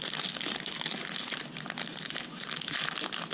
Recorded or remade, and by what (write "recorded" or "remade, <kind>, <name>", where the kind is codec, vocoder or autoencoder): recorded